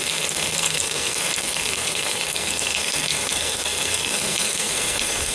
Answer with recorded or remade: remade